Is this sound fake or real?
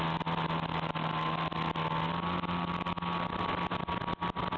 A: real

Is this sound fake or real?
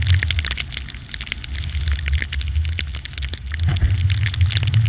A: real